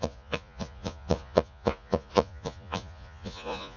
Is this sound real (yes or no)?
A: no